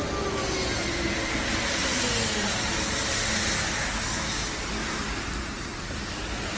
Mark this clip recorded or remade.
recorded